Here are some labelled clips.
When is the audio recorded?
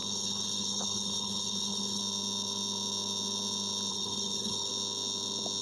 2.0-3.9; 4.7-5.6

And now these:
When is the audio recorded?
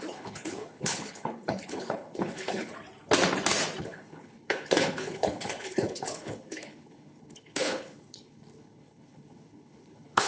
2.7-3.8